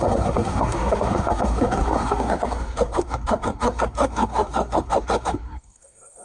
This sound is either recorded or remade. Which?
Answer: remade